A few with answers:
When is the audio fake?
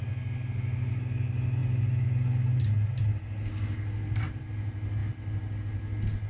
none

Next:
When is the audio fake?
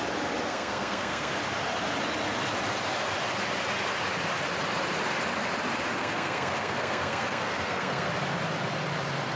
0.5-1.3 (codec, SNAC); 6.0-8.1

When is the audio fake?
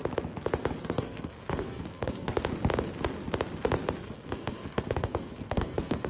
0.8-2.3 (codec, SNAC); 4.0-6.1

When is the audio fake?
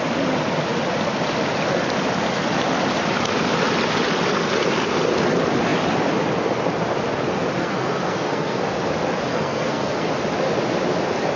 7.6-8.6 (codec, SNAC); 9.3-10.1